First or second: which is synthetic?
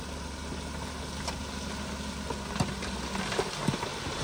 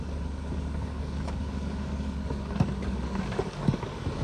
second